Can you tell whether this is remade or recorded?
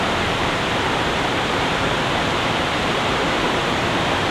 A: remade